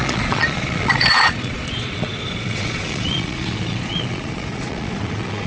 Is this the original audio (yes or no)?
no